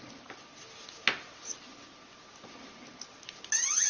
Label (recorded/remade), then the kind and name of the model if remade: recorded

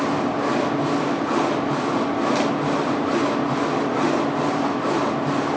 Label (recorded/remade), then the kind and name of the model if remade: recorded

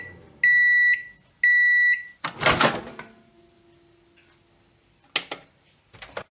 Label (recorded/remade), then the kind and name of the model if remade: recorded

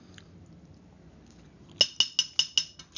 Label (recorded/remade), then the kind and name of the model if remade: recorded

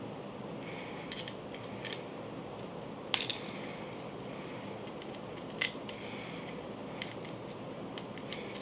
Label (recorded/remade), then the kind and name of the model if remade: recorded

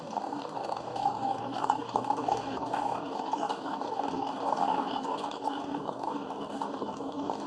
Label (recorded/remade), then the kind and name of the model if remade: remade, codec, DAC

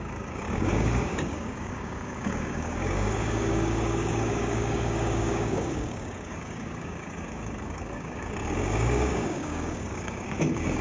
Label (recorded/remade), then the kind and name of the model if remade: remade, codec, DAC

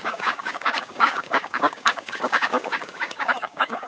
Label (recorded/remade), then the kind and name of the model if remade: remade, codec, DAC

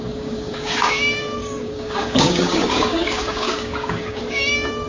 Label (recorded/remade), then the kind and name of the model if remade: remade, codec, DAC